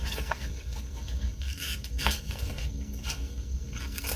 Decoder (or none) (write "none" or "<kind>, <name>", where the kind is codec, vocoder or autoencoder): codec, SNAC